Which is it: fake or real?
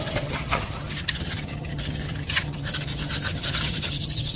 fake